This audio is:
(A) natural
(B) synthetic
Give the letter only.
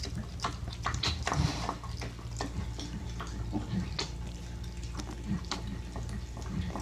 A